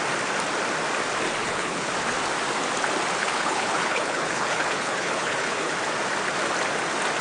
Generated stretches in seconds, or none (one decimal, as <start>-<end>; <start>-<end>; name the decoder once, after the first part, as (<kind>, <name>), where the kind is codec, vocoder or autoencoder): 1.4-1.9 (codec, HILCodec); 3.2-5.7